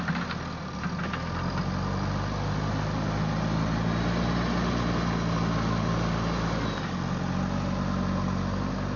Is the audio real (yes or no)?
yes